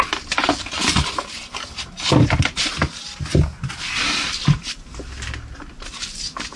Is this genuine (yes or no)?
yes